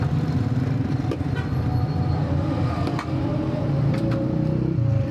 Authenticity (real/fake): fake